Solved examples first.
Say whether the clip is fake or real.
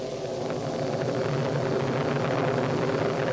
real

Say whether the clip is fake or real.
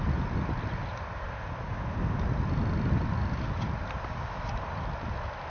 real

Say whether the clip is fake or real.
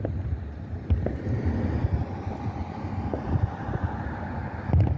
real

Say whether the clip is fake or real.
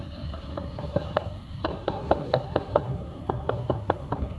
fake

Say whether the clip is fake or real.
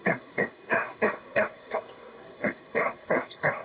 fake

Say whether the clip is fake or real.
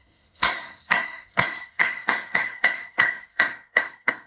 fake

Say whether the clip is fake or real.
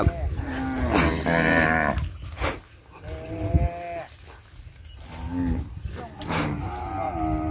real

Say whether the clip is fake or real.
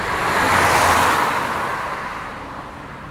real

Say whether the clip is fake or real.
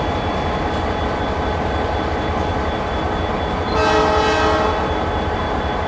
real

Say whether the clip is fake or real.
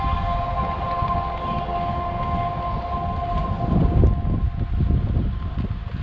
real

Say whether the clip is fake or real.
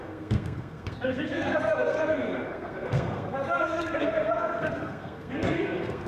fake